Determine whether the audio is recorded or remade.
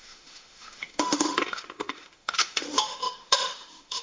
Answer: remade